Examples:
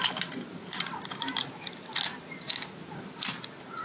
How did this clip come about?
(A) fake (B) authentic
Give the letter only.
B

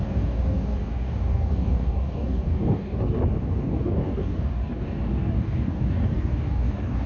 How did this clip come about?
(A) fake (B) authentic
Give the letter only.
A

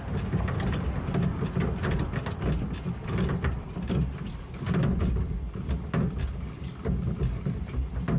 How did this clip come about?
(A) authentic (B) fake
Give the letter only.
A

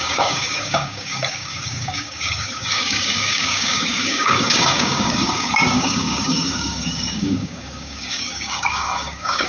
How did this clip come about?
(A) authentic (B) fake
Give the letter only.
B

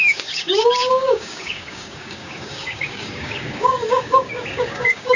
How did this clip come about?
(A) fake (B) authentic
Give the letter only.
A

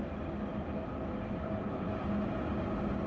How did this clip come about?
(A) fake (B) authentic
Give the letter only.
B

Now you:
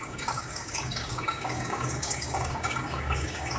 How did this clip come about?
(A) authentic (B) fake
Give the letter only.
B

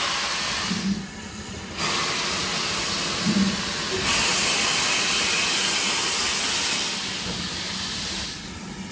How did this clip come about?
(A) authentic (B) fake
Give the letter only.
A